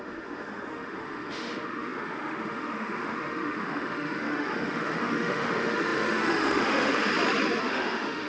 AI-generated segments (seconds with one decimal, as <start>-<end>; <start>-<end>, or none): 0.0-7.1; 7.6-8.3